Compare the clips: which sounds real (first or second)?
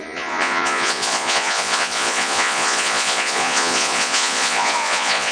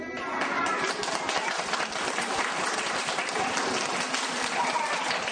second